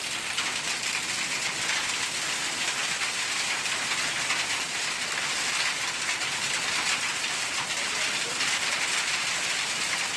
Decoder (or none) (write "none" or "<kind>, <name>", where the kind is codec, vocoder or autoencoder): none